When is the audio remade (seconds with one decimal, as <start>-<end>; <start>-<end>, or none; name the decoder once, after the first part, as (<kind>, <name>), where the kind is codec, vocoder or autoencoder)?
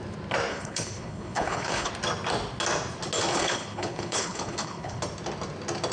0.5-1.9 (codec, HILCodec); 3.3-5.0